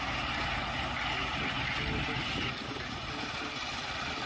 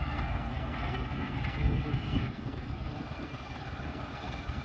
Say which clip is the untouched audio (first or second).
first